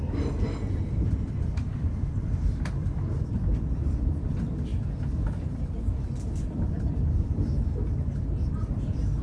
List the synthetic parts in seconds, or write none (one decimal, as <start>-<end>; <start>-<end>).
0.0-9.2